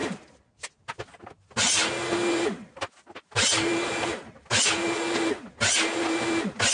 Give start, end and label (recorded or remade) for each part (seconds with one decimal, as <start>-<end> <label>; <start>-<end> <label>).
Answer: 0.0-6.7 recorded